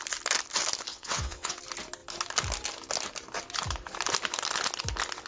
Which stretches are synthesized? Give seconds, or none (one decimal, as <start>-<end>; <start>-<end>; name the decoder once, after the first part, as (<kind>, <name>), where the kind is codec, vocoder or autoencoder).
0.9-1.6 (vocoder, WaveNeXt)